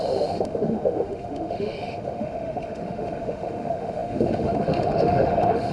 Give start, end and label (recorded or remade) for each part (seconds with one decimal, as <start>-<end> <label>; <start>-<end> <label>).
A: 0.0-5.7 remade

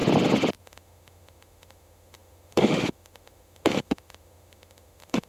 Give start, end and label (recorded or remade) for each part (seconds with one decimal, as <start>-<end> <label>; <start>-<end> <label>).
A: 0.0-0.6 recorded; 0.6-5.3 remade

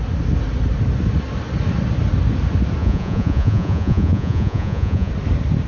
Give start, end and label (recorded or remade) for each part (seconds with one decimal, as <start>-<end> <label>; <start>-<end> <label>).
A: 0.0-2.8 recorded; 2.8-5.1 remade; 5.1-5.7 recorded

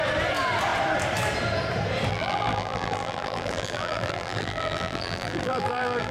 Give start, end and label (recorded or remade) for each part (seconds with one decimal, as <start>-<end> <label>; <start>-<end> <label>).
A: 0.0-2.1 recorded; 2.1-6.1 remade

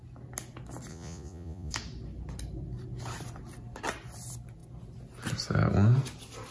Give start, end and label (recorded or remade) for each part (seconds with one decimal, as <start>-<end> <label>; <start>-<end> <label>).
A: 0.0-0.9 recorded; 0.9-1.7 remade; 1.7-6.5 recorded